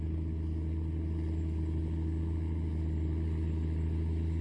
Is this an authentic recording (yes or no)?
yes